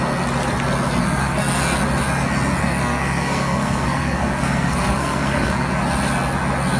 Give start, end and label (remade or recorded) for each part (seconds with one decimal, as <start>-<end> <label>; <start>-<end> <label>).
0.0-1.0 recorded; 1.0-1.6 remade; 1.6-2.6 recorded; 2.6-5.7 remade; 5.7-6.8 recorded